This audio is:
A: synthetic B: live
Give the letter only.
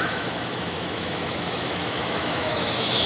A